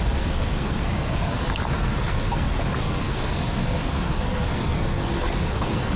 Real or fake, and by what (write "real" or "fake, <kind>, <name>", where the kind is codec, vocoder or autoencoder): fake, codec, SNAC